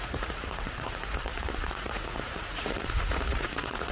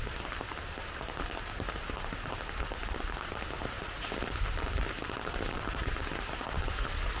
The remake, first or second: first